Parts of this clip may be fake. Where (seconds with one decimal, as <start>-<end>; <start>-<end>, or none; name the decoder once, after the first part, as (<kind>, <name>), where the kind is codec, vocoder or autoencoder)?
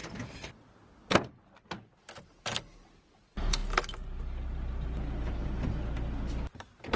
none